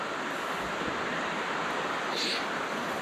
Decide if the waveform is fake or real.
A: real